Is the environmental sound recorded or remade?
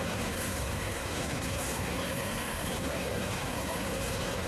remade